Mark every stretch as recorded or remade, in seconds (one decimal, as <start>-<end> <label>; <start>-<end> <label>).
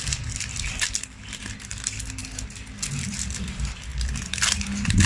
0.0-5.1 remade